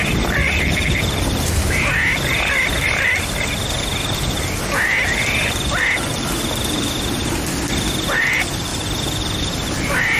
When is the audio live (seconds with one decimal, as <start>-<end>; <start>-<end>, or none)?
1.6-10.2